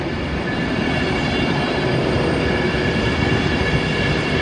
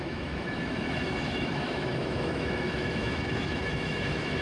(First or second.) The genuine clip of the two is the first